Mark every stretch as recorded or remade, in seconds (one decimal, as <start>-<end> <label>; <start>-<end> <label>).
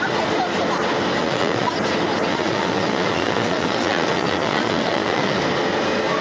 0.0-1.2 recorded; 1.2-1.7 remade; 1.7-2.3 recorded; 2.3-5.4 remade; 5.4-6.2 recorded